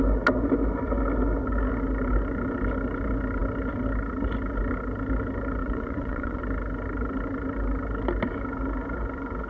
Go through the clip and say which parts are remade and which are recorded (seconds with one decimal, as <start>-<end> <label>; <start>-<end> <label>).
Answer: 0.0-5.6 recorded; 5.6-6.4 remade; 6.4-9.5 recorded